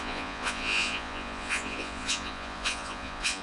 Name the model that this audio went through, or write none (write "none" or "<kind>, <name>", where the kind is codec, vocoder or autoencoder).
vocoder, Vocos